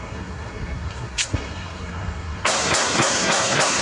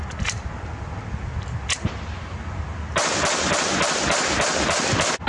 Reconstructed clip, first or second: first